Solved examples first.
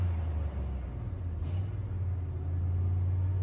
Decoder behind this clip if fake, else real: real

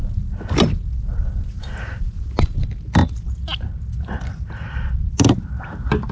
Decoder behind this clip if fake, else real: real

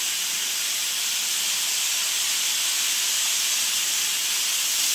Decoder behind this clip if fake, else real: real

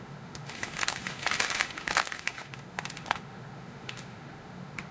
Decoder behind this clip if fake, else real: fake, autoencoder, DAC-VAE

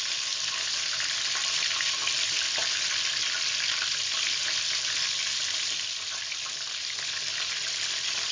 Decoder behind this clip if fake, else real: real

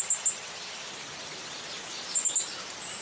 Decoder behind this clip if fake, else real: real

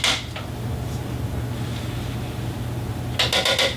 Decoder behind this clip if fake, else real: real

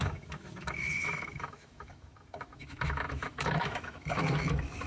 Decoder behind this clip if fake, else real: fake, autoencoder, DAC-VAE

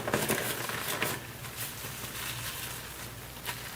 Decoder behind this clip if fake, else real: real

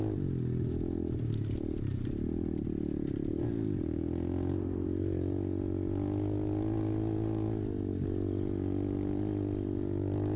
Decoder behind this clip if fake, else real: real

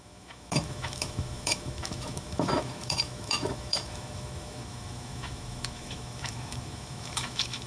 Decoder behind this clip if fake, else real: fake, autoencoder, DAC-VAE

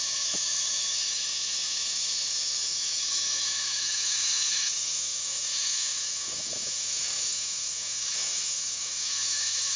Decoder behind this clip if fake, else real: fake, autoencoder, DAC-VAE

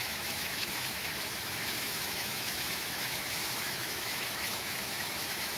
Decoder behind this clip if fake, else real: fake, autoencoder, DAC-VAE